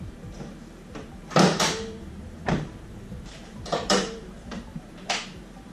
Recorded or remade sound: remade